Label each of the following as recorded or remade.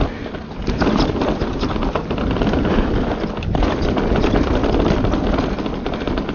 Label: recorded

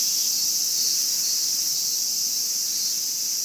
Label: recorded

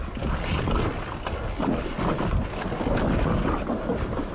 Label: recorded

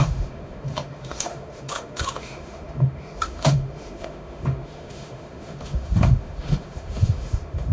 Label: remade